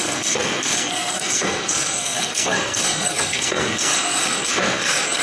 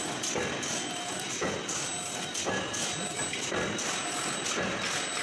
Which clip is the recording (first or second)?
second